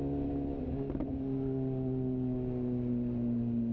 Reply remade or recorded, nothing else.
recorded